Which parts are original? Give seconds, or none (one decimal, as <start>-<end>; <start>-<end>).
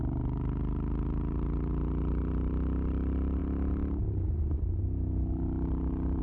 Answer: 0.0-6.2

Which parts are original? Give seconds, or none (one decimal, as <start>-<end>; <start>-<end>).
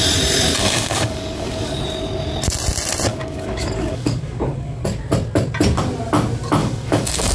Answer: 0.0-0.6; 1.8-3.1; 4.8-6.6